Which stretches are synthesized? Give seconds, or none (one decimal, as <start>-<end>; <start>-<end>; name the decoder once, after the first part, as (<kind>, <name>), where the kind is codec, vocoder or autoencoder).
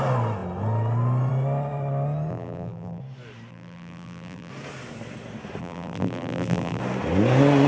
2.3-3.0 (vocoder, BigVGAN v2); 3.5-4.5; 5.6-6.8